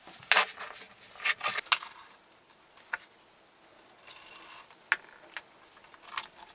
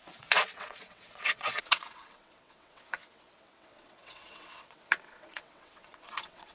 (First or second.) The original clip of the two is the first